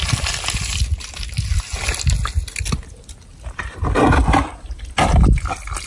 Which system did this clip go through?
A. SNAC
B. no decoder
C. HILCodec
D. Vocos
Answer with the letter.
B